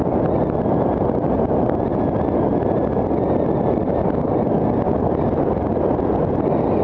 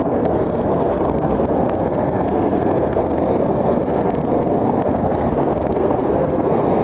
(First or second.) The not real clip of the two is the second